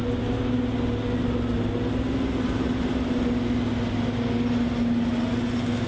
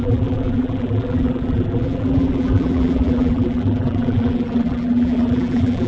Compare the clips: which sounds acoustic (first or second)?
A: first